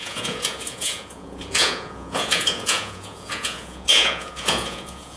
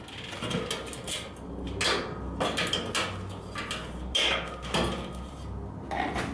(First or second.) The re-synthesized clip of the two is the first